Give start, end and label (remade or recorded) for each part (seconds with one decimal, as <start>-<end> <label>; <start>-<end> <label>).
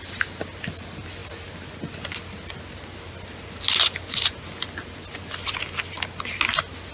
0.0-6.9 recorded